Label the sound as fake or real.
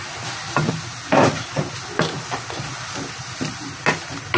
real